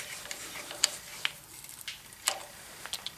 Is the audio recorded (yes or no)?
yes